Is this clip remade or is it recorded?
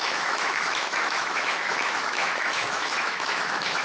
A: remade